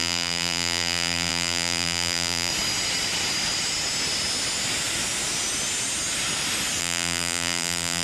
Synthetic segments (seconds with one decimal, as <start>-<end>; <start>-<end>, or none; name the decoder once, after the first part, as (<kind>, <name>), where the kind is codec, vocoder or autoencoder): 0.0-2.5 (vocoder, BigVGAN v2); 6.8-8.0